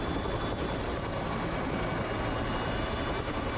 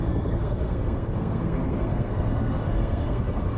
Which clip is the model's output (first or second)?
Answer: second